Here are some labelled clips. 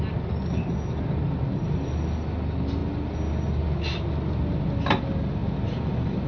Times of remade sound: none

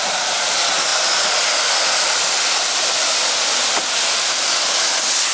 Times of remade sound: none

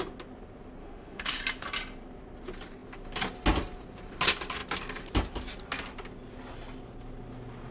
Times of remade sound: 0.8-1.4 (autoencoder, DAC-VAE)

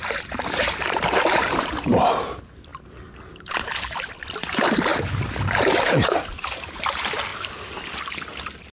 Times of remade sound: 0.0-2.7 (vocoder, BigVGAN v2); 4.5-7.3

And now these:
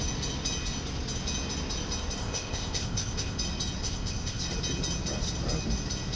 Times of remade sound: 2.2-3.4 (codec, ZipCodec); 3.8-4.4

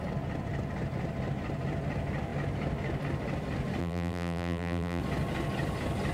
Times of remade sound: 3.8-5.0 (vocoder, BigVGAN v2)

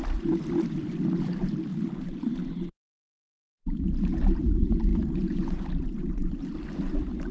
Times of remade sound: 0.0-1.7 (vocoder, BigVGAN v2); 2.9-3.3; 4.3-7.3

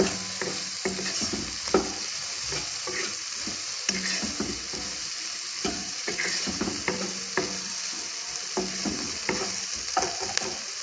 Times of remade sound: 5.8-6.7 (vocoder, Vocos)